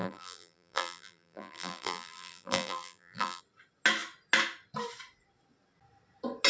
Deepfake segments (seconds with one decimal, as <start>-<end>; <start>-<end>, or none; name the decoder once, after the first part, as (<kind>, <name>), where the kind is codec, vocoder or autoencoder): 0.0-3.4 (vocoder, BigVGAN v2)